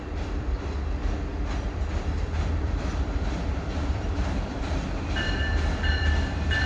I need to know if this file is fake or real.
fake